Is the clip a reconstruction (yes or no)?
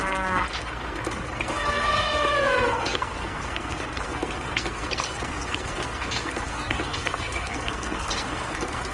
yes